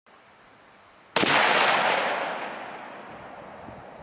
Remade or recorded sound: recorded